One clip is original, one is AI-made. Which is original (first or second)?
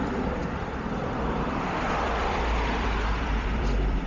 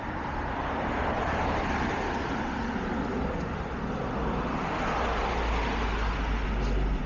second